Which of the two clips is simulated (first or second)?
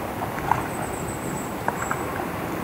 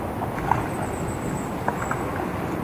first